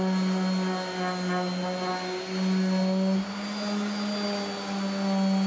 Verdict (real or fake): real